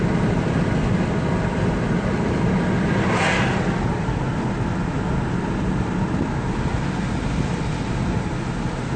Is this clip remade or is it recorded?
recorded